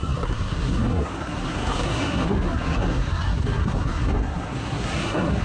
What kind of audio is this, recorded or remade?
remade